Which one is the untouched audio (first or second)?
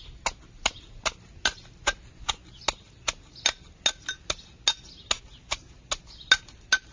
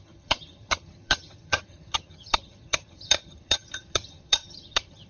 first